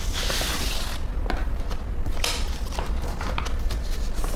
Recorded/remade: recorded